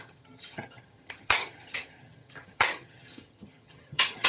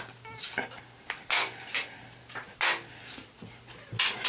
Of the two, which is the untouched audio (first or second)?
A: second